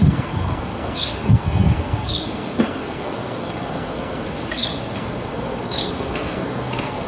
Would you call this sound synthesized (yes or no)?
yes